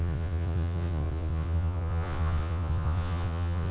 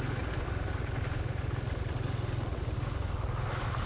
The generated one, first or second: first